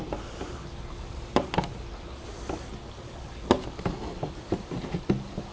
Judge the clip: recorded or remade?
recorded